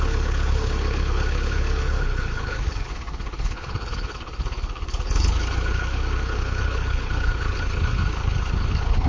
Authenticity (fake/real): fake